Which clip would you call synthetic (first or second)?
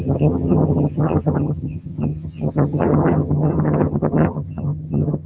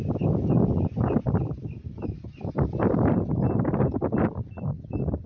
first